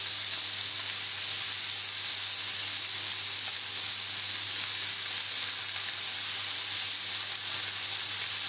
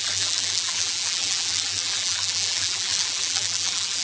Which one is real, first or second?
first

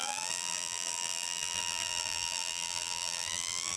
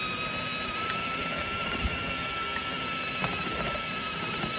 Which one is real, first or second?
second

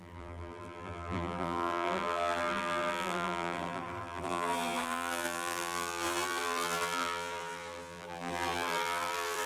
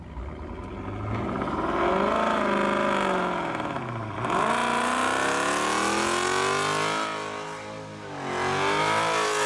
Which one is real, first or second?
second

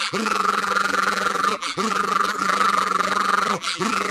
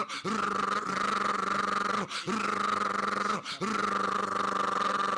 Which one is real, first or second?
second